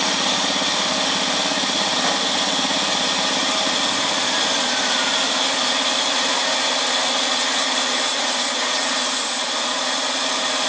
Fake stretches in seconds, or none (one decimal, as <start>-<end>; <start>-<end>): 8.1-10.2